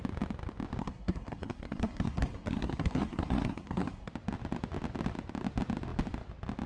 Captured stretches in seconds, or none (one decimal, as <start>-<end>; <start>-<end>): 0.0-0.8; 4.1-6.7